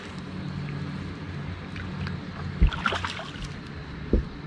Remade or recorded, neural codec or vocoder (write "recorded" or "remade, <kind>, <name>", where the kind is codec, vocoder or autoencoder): recorded